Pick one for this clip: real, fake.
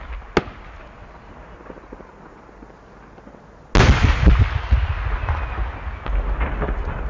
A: real